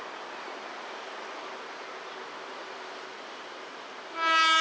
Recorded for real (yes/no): yes